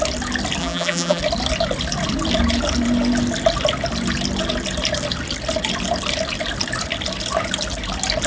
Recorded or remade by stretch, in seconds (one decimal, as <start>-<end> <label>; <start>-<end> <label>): 0.0-0.6 recorded; 0.6-1.2 remade; 1.2-8.3 recorded